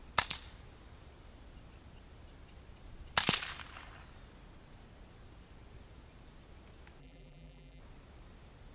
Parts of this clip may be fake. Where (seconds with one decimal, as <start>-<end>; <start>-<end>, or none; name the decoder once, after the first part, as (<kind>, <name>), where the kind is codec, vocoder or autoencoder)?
7.0-7.8 (vocoder, BigVGAN v2)